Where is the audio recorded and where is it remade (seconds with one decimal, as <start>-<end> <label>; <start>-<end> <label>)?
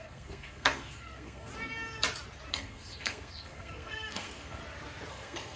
0.0-1.5 remade; 1.5-2.5 recorded; 2.5-4.6 remade; 4.6-5.1 recorded; 5.1-5.6 remade